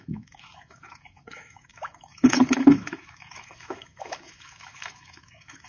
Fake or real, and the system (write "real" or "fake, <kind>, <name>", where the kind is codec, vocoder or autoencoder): fake, autoencoder, DAC-VAE